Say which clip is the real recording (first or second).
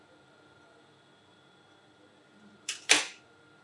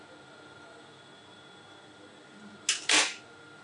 second